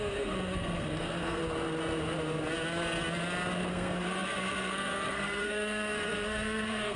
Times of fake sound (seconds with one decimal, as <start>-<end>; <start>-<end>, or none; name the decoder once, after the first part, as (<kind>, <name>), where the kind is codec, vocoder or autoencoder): 0.0-1.4 (codec, SNAC); 3.7-7.0